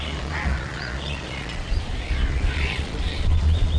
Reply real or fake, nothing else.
fake